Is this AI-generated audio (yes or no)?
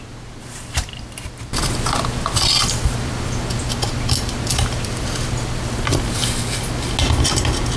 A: no